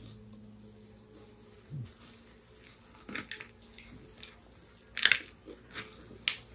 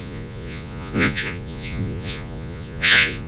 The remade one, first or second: second